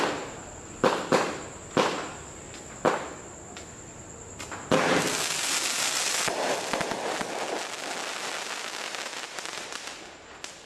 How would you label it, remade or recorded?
recorded